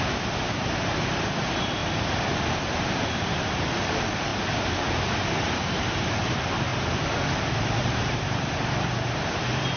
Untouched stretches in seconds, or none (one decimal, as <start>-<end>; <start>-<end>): 1.8-3.0; 4.3-5.4; 6.7-7.8